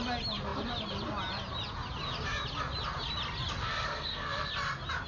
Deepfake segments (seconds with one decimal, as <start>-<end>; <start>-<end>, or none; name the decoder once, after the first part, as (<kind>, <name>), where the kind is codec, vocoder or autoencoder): 3.6-4.5 (codec, SNAC)